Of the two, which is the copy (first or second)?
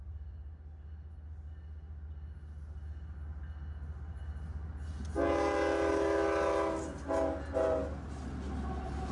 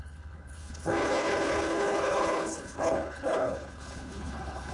second